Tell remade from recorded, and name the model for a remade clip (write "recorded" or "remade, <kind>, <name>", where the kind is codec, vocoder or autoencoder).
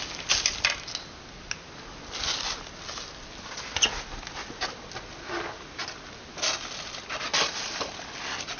recorded